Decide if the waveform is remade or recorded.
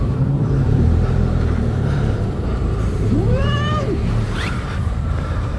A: remade